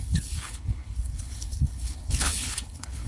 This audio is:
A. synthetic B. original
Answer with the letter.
A